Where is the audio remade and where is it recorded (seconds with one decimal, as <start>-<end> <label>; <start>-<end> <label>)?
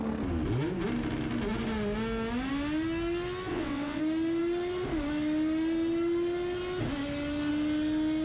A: 0.0-3.5 recorded; 3.5-4.0 remade; 4.0-8.2 recorded